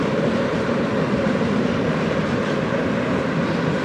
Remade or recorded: remade